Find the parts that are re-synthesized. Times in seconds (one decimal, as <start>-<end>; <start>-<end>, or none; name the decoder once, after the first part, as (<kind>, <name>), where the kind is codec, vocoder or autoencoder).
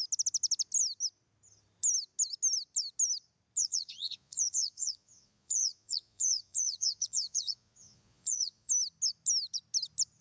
3.6-8.7 (vocoder, Vocos)